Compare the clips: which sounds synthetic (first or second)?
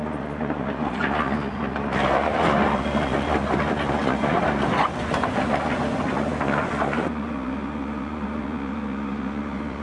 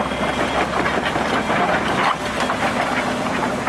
first